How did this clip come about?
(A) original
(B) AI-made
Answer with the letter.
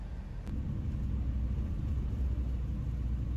A